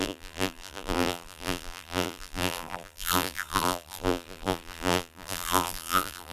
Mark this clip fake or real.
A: fake